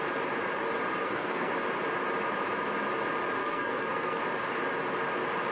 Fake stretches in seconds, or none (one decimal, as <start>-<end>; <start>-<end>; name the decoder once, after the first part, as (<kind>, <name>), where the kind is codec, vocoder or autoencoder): 1.0-1.5 (codec, SNAC); 3.4-4.2